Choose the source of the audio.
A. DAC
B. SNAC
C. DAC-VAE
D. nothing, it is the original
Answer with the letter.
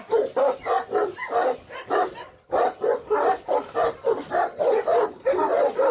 D